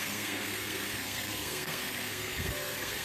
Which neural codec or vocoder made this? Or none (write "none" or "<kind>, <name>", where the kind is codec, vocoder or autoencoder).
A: codec, SNAC